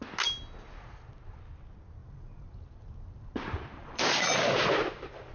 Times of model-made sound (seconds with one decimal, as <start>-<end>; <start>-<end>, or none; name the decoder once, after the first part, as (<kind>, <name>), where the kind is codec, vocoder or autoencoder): 2.0-5.3 (vocoder, BigVGAN v2)